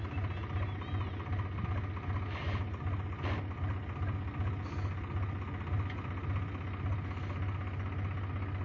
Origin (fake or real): real